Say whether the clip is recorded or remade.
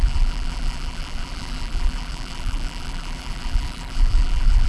remade